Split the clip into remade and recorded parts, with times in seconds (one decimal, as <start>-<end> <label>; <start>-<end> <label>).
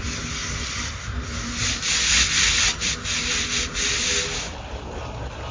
0.0-5.5 recorded